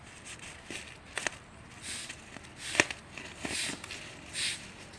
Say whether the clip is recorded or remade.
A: recorded